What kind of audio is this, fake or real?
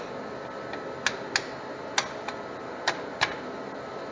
real